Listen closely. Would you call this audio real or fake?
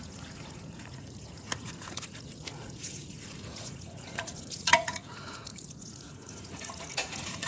fake